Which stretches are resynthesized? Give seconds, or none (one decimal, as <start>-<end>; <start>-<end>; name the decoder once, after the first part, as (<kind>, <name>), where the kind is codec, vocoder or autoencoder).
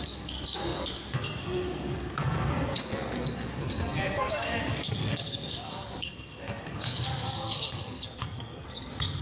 0.0-9.2 (codec, SNAC)